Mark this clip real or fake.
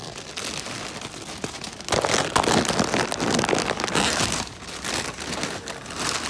real